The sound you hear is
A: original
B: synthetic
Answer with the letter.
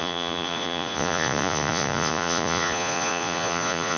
B